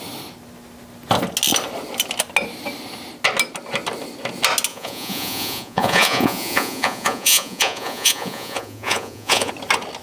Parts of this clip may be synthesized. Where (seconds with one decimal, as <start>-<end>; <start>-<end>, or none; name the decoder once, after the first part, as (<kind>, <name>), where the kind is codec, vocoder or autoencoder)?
4.7-9.5 (vocoder, Vocos)

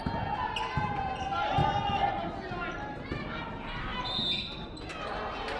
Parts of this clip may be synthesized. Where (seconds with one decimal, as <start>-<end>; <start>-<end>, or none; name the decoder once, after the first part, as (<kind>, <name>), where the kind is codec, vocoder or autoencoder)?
none

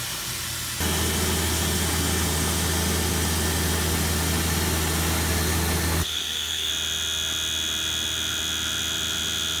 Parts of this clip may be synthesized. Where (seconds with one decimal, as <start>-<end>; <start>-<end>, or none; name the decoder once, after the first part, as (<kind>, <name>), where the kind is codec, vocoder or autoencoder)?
6.0-6.7 (codec, SNAC)

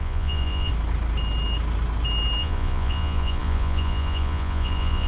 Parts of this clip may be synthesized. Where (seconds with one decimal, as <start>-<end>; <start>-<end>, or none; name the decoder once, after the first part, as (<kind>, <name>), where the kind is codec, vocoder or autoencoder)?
0.0-0.7 (vocoder, Vocos); 2.4-5.1